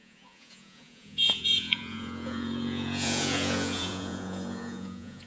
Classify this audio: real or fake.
fake